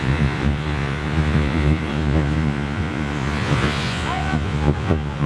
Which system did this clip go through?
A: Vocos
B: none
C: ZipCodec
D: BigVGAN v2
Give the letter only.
A